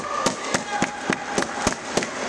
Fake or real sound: real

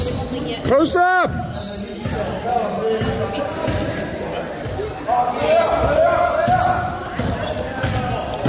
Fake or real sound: real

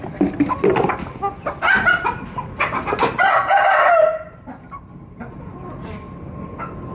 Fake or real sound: real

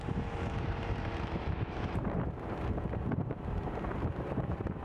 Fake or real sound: fake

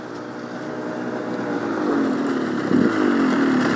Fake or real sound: real